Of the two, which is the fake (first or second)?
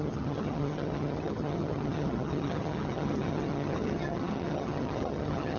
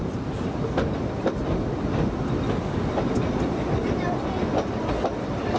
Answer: first